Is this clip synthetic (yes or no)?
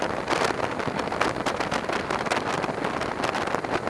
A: no